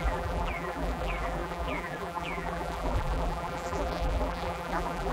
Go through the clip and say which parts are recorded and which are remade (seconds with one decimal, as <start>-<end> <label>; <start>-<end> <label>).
0.0-5.1 remade